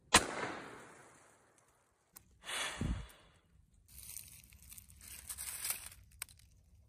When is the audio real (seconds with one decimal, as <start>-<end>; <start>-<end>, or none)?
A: 0.0-6.9